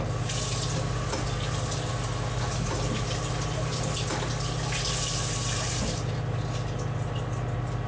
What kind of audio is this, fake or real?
real